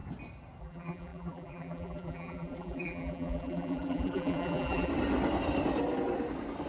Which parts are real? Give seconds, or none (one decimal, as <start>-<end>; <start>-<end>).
0.0-0.6; 4.9-6.7